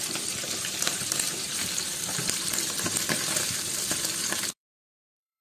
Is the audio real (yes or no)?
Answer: no